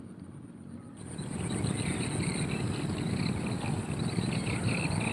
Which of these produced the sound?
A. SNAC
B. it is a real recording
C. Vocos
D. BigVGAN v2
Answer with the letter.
B